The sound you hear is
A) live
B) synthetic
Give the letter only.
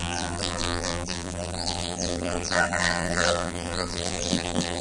B